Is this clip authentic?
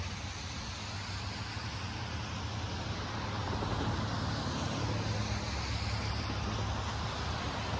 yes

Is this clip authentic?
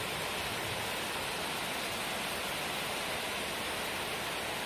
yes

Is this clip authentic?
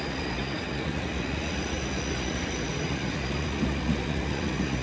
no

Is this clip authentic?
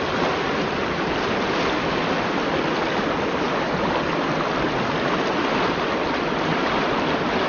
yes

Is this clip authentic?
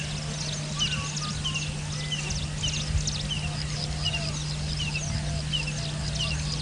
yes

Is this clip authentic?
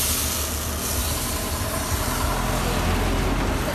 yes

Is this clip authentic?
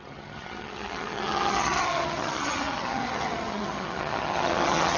no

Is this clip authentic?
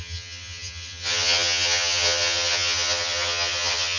no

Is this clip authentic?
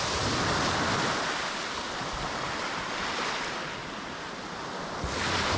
yes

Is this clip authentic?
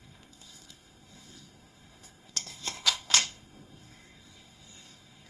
no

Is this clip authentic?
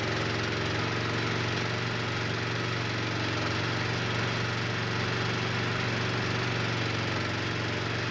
yes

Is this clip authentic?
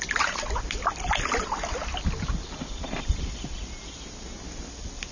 yes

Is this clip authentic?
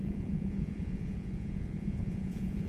no